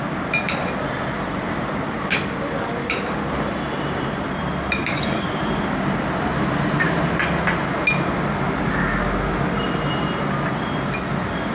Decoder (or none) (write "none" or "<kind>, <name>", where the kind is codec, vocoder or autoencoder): none